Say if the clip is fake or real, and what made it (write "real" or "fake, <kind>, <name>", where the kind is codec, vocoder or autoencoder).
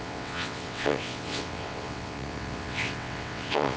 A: fake, vocoder, WaveNeXt